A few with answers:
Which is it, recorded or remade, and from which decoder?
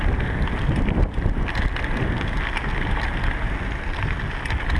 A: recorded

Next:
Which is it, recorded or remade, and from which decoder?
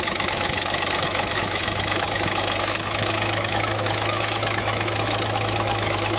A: remade, autoencoder, DAC-VAE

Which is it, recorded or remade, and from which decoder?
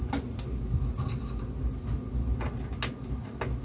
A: recorded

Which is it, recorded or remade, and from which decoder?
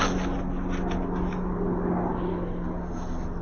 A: recorded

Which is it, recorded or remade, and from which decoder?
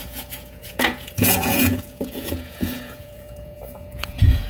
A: remade, vocoder, Vocos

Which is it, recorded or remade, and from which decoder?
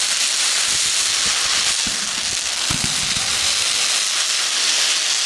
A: recorded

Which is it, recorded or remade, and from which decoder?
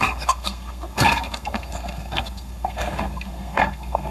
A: remade, codec, SNAC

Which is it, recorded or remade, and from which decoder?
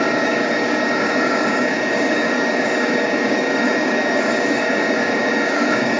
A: remade, codec, DAC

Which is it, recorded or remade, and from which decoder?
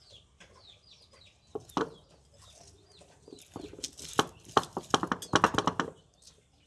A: recorded